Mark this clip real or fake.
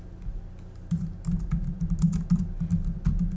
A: real